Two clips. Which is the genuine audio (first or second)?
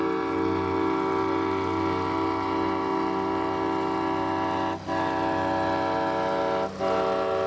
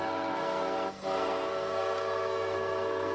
first